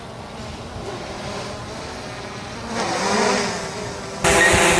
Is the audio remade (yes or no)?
no